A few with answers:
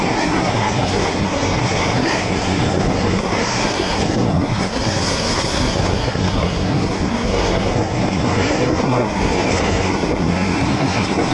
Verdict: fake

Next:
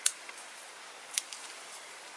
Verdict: fake